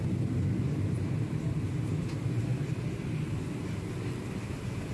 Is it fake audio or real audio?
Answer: real